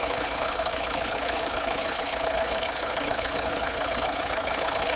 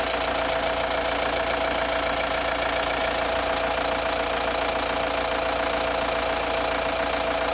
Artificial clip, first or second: first